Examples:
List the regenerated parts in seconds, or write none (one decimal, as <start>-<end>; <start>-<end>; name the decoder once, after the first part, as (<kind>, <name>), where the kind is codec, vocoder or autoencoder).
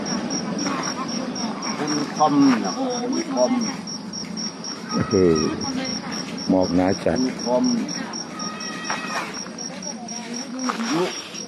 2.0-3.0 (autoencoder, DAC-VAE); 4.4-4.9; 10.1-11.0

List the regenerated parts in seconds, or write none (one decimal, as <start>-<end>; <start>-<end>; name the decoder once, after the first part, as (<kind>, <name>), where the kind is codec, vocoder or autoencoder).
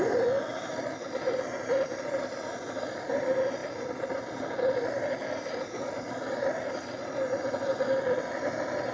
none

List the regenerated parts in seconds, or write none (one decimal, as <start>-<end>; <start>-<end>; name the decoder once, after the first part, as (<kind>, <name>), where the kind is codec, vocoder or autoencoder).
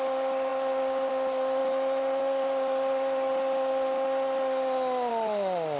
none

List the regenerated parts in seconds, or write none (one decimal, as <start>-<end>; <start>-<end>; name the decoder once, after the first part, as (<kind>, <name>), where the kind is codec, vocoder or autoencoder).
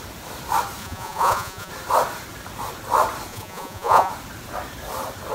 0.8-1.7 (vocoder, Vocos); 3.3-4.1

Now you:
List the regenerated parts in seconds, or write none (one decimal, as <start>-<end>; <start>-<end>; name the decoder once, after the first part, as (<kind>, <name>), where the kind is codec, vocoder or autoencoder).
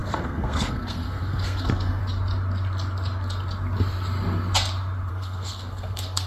0.0-2.0 (codec, SNAC); 5.1-6.3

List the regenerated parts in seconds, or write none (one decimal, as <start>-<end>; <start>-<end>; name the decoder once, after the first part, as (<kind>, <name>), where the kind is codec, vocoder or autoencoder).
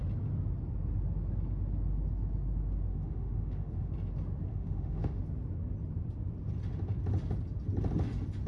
2.9-3.9 (autoencoder, DAC-VAE); 4.5-5.2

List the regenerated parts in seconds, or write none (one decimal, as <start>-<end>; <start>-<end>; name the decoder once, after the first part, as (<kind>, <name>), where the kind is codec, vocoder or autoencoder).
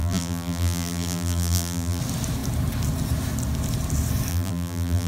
0.0-2.0 (vocoder, BigVGAN v2); 4.3-5.1